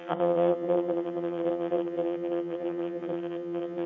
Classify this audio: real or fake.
fake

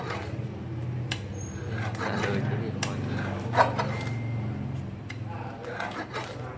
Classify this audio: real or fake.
fake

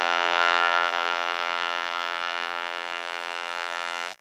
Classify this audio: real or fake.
fake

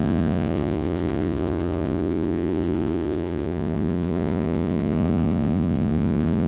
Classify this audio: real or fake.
fake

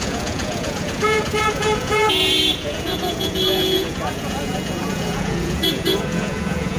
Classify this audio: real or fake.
fake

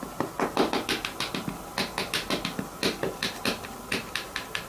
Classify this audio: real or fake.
real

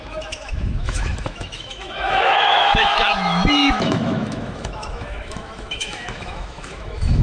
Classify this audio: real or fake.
fake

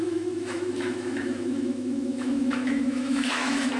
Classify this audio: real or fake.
fake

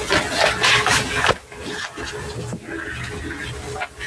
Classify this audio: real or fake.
real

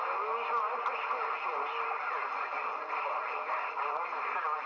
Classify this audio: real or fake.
real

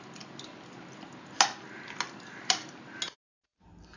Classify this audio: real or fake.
real